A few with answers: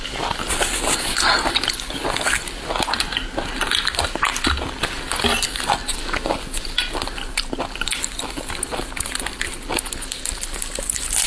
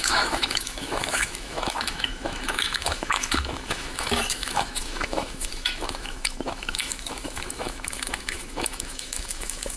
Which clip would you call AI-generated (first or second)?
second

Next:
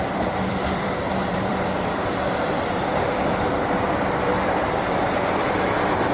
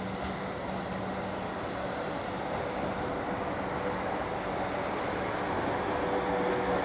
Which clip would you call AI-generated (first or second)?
first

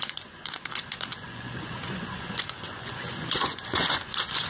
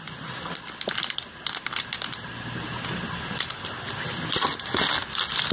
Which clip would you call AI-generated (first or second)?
first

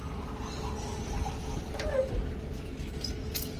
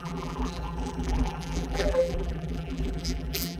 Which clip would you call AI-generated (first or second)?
second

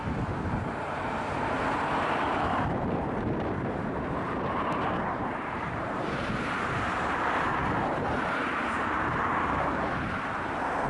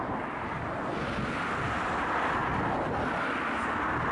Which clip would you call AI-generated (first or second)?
first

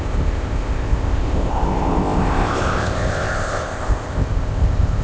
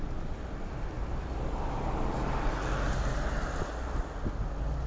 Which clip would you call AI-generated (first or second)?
first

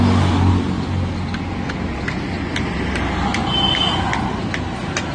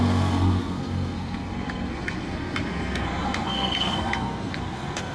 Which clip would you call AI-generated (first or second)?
second